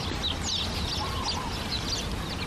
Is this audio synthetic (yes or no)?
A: no